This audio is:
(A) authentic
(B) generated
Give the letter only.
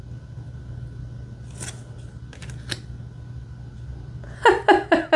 A